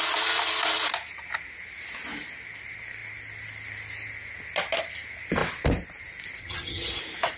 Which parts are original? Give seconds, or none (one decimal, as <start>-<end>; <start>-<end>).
0.0-6.4; 7.0-7.4